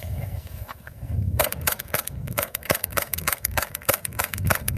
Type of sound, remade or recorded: remade